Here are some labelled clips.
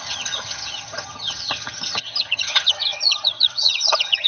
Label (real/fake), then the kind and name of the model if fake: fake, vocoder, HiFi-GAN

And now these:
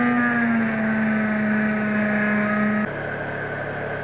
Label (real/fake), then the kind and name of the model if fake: real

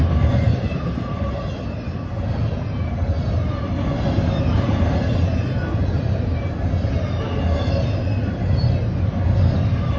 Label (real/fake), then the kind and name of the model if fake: real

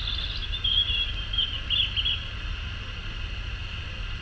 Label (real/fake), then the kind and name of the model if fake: real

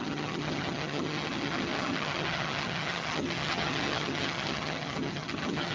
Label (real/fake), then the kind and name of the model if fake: fake, vocoder, HiFi-GAN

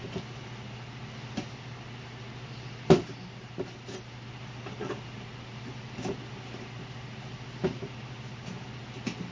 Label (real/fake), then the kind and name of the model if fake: real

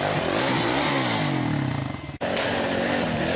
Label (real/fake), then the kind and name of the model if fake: real